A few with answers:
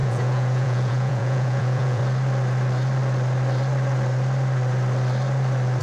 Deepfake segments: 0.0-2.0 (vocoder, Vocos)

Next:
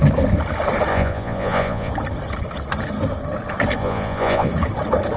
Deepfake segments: 0.9-1.9 (vocoder, Vocos); 3.8-4.5

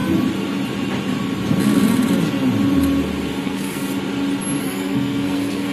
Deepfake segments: 3.4-3.8 (codec, SNAC); 4.6-5.7

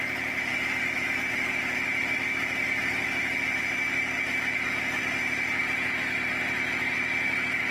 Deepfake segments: none

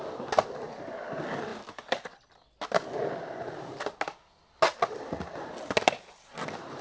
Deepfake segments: none

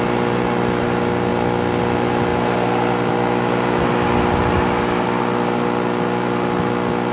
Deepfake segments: none

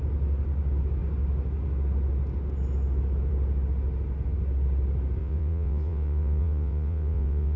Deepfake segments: 5.2-7.6 (vocoder, WaveNeXt)

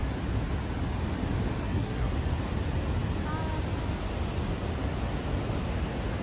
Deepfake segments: 1.6-2.1 (codec, SNAC)